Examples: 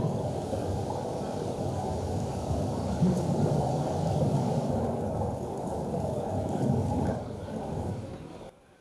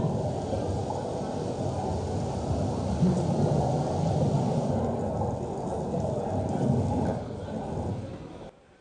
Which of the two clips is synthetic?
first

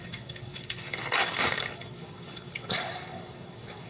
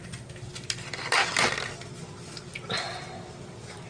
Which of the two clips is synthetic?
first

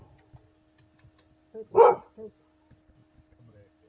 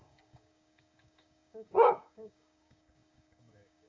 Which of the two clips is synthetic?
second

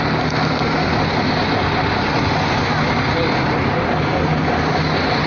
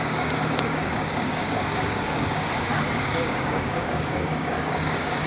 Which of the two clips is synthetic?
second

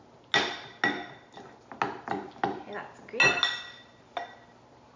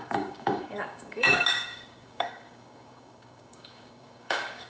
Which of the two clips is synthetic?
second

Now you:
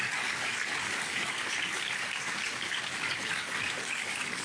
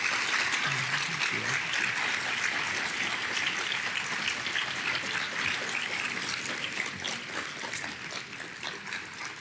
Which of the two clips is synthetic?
first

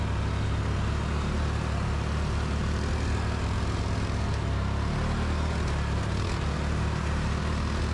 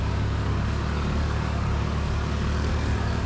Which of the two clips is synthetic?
second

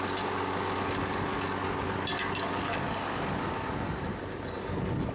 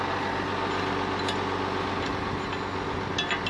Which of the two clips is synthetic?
first